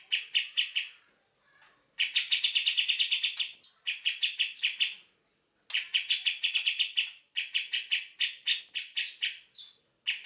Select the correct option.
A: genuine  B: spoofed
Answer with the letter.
A